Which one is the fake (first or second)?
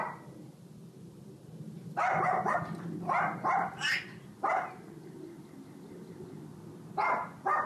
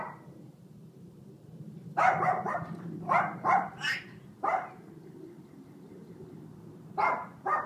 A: second